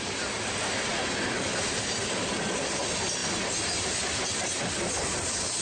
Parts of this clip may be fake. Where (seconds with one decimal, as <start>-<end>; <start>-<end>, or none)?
none